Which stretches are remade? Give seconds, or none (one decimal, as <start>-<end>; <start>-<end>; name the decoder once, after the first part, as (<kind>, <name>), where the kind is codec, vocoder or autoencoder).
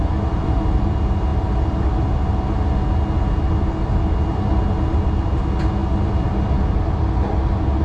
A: none